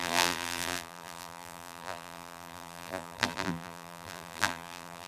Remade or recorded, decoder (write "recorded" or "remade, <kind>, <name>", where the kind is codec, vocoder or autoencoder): remade, vocoder, BigVGAN v2